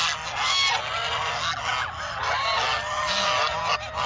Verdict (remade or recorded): recorded